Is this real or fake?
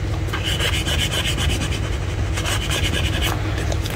real